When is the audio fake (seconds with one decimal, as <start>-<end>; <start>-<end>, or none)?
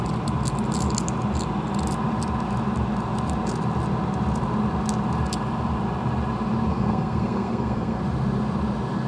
6.7-8.0